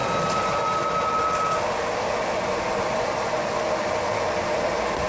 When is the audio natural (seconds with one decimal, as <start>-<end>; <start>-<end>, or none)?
0.0-5.1